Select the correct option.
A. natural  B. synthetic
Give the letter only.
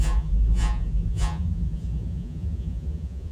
B